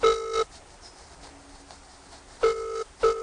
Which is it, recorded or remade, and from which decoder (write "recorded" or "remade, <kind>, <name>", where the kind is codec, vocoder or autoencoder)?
recorded